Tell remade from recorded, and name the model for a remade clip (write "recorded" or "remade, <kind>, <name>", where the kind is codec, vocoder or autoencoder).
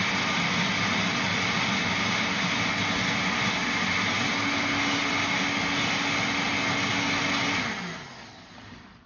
recorded